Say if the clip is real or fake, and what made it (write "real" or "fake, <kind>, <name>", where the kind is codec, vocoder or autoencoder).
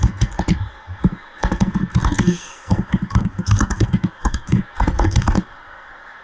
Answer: fake, codec, SNAC